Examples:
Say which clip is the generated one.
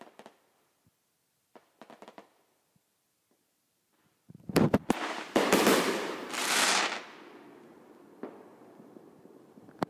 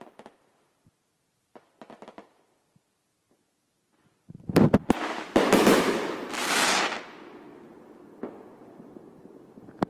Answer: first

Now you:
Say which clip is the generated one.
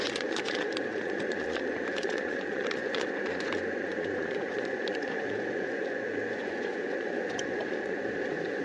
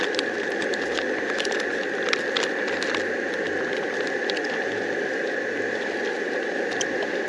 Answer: first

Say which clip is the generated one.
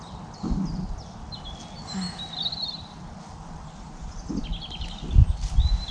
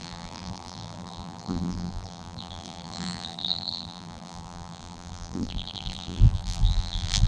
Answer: second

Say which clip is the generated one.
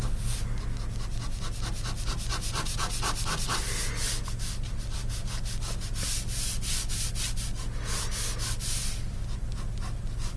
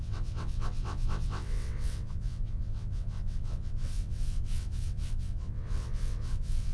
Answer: second